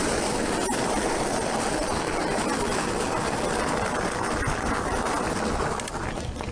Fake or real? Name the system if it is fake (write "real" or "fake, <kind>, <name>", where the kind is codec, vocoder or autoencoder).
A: real